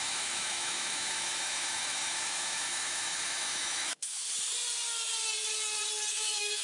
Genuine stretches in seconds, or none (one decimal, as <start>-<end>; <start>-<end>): 4.2-6.1